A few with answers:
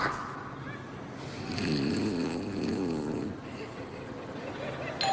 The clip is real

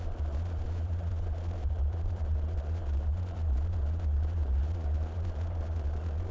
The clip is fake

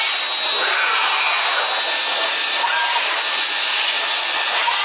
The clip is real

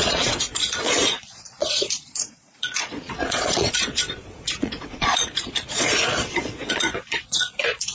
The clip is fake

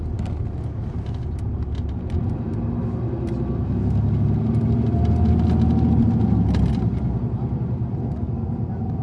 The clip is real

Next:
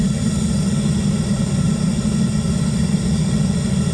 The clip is real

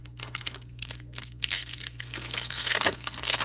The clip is fake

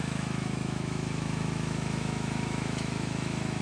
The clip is fake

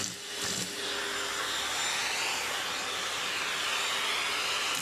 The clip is real